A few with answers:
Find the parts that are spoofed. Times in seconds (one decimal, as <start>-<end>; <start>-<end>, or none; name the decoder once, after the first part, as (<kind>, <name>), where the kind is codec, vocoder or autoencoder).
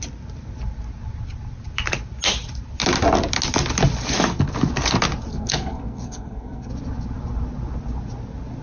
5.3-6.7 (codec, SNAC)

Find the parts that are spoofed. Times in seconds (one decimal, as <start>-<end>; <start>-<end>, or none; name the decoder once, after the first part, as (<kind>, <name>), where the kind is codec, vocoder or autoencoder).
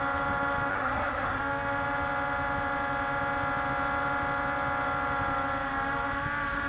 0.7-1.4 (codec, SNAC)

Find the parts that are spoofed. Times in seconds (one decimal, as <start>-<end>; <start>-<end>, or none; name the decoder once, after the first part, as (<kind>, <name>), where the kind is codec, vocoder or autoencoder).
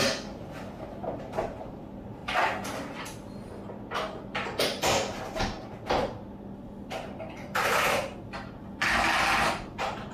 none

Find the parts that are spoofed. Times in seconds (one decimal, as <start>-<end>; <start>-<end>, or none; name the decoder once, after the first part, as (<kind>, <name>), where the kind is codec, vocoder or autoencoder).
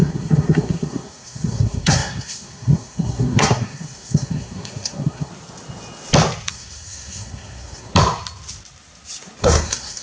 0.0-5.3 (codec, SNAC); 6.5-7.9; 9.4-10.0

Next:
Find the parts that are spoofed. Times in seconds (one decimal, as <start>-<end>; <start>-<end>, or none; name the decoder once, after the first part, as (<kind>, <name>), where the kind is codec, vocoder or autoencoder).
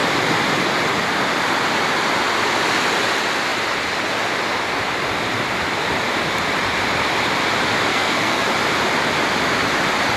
7.9-8.5 (codec, SNAC)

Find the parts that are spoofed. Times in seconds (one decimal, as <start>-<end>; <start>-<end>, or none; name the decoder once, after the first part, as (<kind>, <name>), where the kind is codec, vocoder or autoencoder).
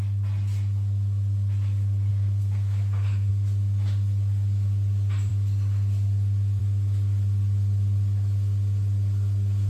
2.1-3.3 (codec, SNAC)